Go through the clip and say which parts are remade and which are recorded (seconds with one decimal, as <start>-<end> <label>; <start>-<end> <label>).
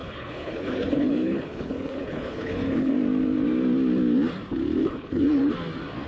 0.0-2.9 remade; 2.9-4.8 recorded; 4.8-5.5 remade; 5.5-6.1 recorded